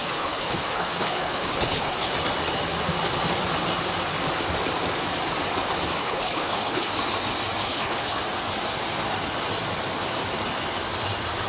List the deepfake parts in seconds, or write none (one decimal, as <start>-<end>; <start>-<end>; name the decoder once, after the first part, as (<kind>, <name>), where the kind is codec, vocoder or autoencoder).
0.0-2.1 (codec, HILCodec); 6.0-6.9; 7.6-8.2